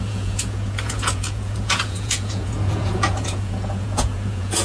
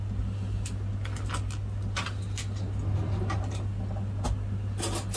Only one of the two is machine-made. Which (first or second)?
first